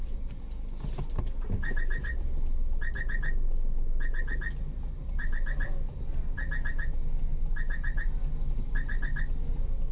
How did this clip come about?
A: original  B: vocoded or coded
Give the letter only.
A